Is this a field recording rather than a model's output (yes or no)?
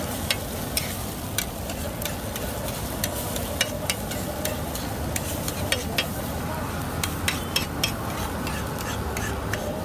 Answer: yes